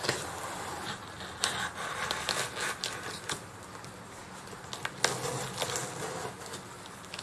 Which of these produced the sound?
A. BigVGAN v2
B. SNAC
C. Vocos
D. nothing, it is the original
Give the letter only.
D